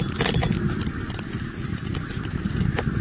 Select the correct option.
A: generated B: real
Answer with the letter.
B